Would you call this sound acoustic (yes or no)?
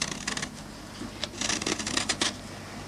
yes